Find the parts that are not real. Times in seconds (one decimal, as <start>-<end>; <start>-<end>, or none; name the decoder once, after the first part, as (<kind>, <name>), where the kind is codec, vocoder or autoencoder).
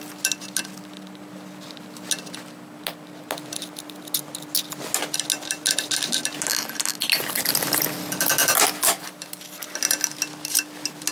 none